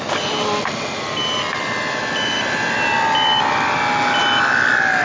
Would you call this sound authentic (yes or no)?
yes